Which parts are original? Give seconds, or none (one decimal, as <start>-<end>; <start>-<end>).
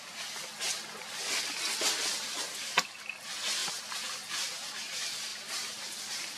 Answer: 0.0-6.4